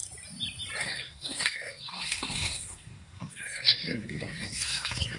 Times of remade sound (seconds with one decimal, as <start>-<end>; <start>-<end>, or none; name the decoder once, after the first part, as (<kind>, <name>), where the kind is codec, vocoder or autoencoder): 0.8-5.2 (codec, SNAC)

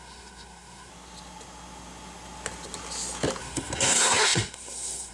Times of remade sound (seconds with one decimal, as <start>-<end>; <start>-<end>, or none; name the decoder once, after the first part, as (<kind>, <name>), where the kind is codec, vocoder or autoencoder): 0.0-0.9 (codec, SNAC); 3.4-5.1